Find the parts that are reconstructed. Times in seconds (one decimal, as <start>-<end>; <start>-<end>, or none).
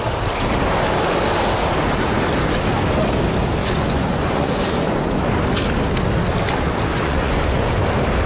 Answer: 3.6-5.2; 6.9-7.7